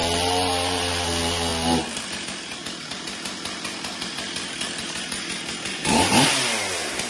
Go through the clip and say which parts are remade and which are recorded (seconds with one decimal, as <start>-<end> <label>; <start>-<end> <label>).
0.0-5.8 recorded; 5.8-6.3 remade; 6.3-7.1 recorded